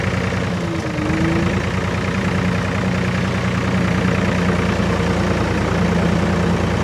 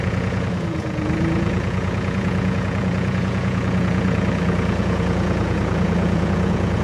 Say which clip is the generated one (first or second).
second